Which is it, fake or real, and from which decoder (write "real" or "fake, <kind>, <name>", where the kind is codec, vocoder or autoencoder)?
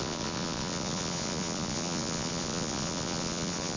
fake, vocoder, Vocos